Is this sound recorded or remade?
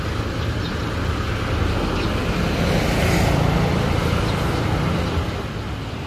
recorded